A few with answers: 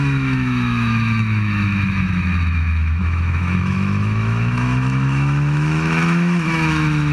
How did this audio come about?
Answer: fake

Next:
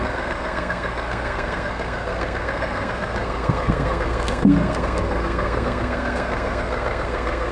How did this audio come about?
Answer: fake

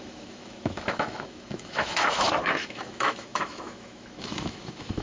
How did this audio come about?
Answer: fake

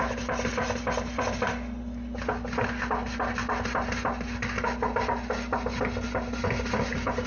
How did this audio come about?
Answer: real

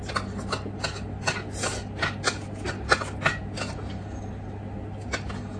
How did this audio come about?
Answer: real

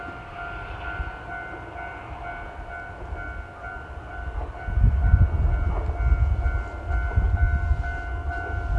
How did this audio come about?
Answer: real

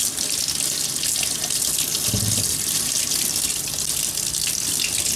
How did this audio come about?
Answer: real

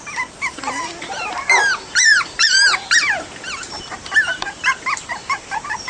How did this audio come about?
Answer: fake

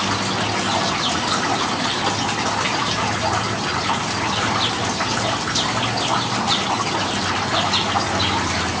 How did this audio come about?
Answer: real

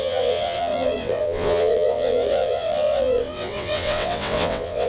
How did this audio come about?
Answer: fake